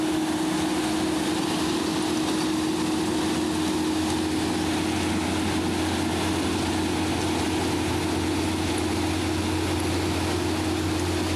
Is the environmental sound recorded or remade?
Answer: recorded